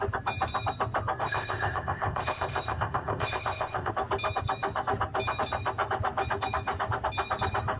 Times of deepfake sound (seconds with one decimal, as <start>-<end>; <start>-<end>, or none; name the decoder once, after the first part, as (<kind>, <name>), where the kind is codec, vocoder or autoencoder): 1.2-3.9 (codec, ZipCodec)